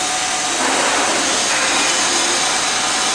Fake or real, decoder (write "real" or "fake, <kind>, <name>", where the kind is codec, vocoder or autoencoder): real